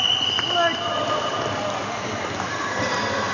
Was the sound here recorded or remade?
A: recorded